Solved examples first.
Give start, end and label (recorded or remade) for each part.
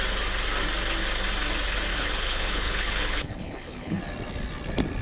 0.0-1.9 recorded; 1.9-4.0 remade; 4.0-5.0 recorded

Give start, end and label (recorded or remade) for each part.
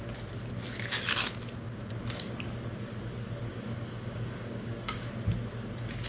0.0-3.5 recorded; 3.5-5.1 remade; 5.1-6.1 recorded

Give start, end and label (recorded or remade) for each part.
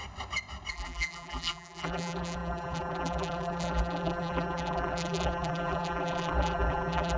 0.0-0.7 recorded; 0.7-7.2 remade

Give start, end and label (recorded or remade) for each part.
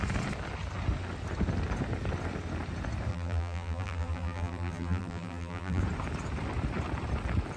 0.0-3.1 recorded; 3.1-5.8 remade; 5.8-7.6 recorded